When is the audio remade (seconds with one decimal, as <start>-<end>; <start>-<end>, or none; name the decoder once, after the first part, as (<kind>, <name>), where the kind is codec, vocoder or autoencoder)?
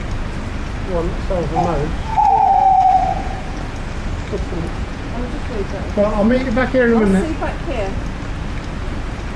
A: 1.6-3.6 (vocoder, Vocos); 4.4-6.6